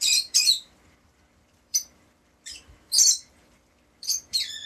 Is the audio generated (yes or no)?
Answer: yes